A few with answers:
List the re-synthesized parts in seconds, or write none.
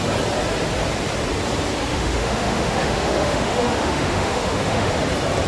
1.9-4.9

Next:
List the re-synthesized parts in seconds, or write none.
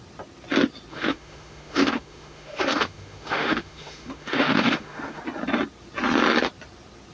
0.9-5.2